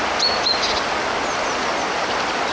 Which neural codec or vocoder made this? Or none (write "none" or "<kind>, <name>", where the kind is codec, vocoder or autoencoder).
none